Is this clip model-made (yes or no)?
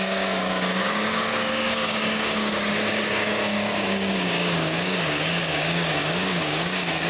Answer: yes